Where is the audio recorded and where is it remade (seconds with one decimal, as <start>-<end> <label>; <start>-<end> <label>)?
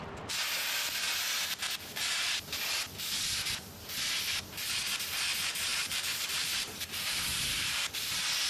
0.0-5.7 recorded; 5.7-7.9 remade; 7.9-8.5 recorded